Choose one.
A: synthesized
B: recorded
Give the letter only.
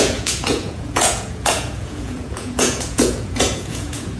A